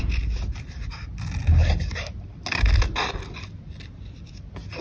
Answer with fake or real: real